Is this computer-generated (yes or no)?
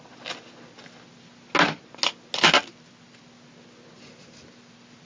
no